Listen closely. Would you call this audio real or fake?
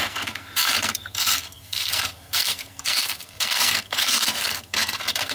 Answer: fake